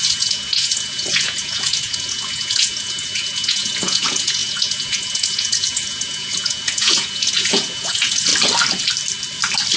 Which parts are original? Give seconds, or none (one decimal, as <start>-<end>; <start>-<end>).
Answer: 8.3-9.8